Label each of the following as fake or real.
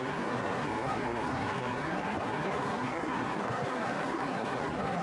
fake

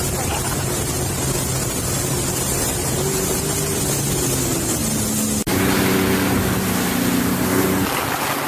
real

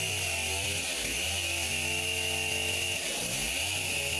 real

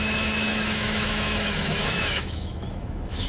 fake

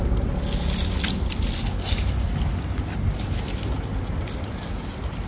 real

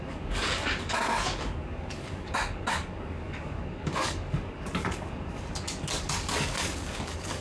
fake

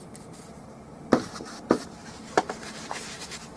fake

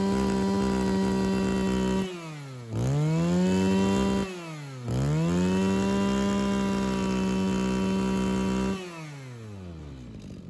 real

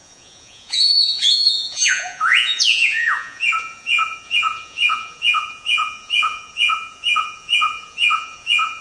fake